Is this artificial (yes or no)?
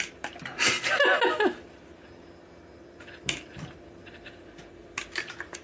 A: no